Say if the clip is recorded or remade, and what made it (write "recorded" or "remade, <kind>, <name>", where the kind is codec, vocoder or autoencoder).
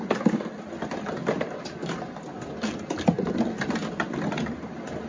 recorded